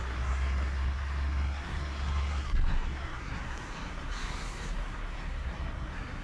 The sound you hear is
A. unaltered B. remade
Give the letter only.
B